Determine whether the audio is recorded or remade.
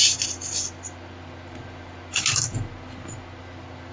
recorded